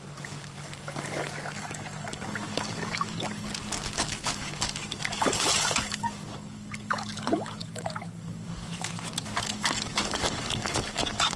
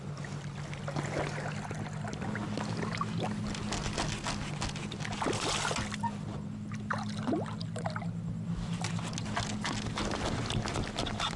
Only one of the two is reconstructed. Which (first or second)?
first